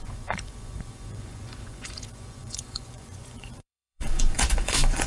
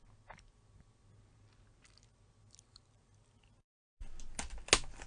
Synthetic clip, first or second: first